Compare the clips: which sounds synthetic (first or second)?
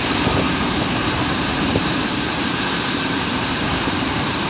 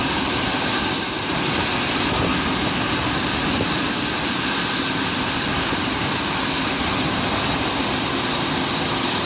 first